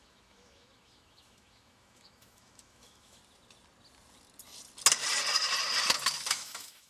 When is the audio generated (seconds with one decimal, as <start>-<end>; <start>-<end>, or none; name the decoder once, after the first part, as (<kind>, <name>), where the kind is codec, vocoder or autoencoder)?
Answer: 0.0-3.2 (autoencoder, DAC-VAE); 6.3-6.9

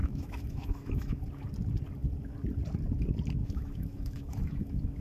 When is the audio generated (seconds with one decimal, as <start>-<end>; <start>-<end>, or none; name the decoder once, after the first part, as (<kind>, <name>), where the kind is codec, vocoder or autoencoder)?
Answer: 0.0-1.2 (autoencoder, DAC-VAE); 3.4-5.0

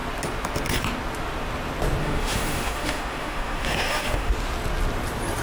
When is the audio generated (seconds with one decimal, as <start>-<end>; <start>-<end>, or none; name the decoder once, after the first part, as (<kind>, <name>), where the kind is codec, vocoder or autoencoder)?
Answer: 2.0-4.3 (autoencoder, DAC-VAE)